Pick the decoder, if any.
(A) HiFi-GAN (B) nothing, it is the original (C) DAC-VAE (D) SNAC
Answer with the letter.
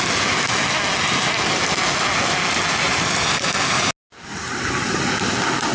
B